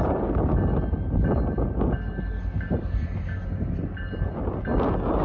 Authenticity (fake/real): real